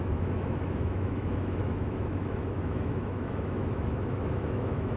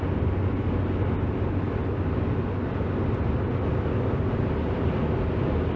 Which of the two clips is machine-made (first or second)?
first